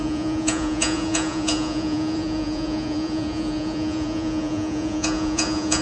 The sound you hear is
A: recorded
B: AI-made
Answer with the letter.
B